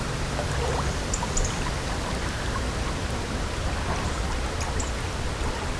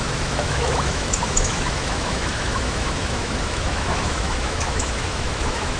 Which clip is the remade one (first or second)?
second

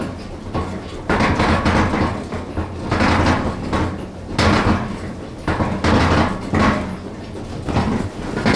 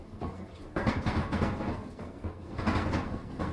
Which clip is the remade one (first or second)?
second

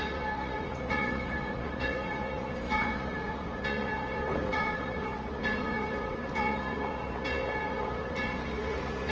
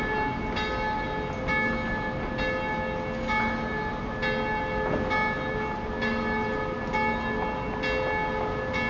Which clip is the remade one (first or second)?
first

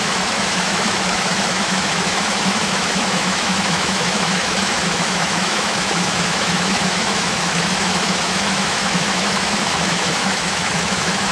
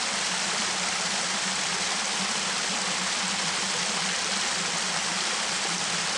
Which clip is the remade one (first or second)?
first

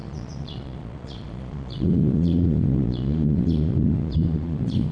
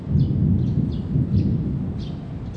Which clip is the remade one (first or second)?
first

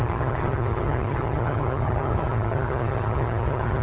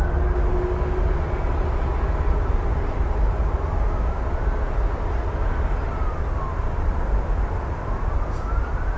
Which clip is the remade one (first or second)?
first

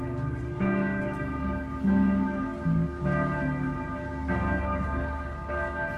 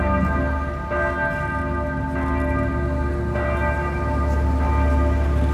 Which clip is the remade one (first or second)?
first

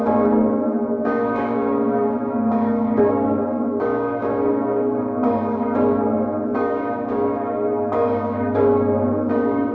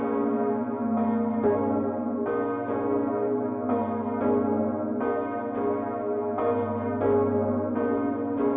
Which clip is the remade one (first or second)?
first